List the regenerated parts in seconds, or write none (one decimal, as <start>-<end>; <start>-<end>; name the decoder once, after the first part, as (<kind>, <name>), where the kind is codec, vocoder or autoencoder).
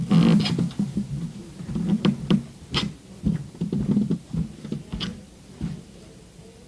5.1-6.7 (vocoder, BigVGAN v2)